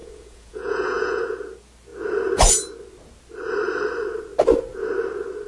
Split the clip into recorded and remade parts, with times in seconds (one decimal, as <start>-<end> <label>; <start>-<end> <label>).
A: 0.0-1.2 remade; 1.2-5.5 recorded